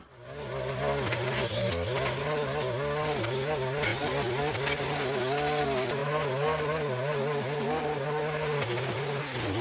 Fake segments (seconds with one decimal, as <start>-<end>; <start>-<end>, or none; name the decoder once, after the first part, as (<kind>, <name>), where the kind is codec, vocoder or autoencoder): none